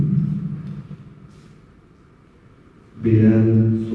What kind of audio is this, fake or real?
real